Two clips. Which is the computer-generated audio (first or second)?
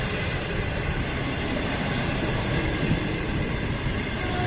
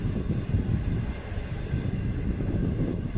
first